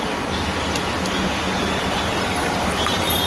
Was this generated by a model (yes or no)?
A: no